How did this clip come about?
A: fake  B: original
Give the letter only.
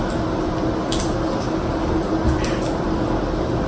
B